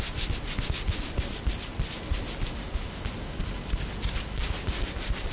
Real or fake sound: real